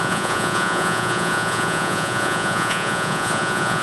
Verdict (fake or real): fake